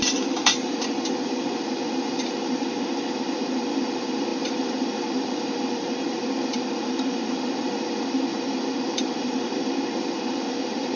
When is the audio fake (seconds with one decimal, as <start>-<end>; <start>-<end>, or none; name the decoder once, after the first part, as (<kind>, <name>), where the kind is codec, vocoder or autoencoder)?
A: 0.0-11.0 (vocoder, BigVGAN v2)